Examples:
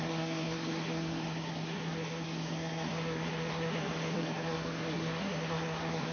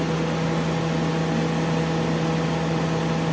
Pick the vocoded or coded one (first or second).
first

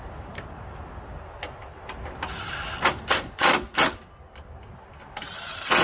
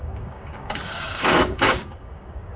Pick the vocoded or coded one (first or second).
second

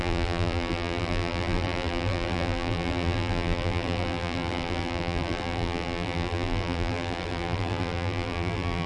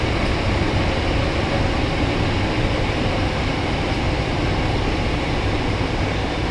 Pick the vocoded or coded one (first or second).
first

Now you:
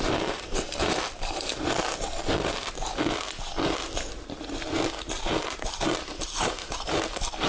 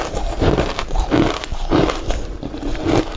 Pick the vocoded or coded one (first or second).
second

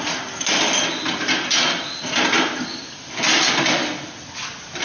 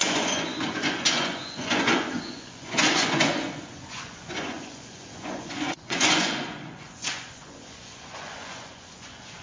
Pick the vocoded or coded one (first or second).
second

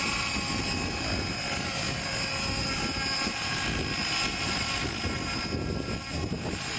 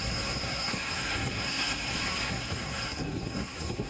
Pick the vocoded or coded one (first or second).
second